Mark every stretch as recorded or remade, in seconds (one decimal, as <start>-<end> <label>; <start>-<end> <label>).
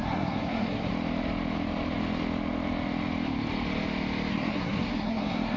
0.0-0.9 remade; 0.9-4.3 recorded; 4.3-5.6 remade